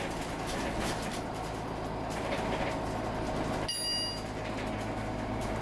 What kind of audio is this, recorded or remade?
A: recorded